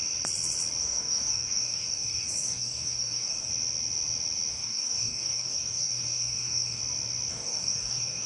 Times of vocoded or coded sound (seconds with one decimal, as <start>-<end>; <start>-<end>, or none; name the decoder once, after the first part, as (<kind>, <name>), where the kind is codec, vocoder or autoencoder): 0.8-3.5 (codec, DAC); 4.5-6.8; 7.3-8.3